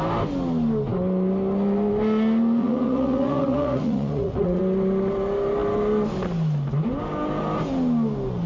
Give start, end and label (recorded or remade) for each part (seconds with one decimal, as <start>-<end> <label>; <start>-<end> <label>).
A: 0.0-2.6 recorded; 2.6-4.6 remade; 4.6-8.5 recorded